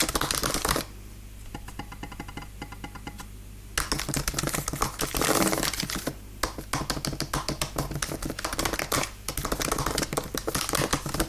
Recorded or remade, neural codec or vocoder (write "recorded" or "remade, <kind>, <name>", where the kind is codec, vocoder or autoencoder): recorded